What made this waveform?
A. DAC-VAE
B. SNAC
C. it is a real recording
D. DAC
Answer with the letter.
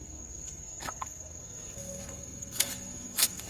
B